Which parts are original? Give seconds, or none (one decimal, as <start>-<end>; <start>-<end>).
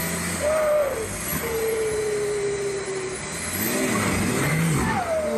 0.0-5.4